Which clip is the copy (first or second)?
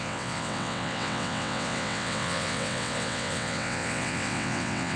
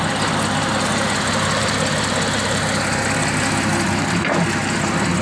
first